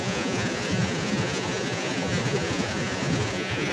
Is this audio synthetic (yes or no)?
yes